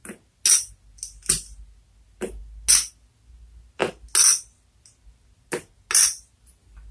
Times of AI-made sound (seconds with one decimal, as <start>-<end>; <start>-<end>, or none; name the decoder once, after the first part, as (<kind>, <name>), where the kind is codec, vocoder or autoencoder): none